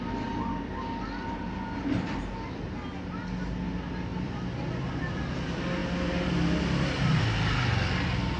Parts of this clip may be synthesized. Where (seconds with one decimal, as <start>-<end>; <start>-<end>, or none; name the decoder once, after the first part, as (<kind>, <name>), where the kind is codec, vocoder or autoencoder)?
1.2-2.2 (vocoder, BigVGAN v2); 4.1-5.2